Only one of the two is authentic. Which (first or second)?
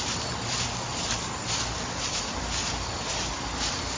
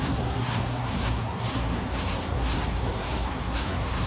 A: first